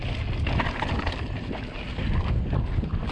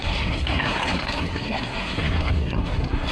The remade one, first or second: second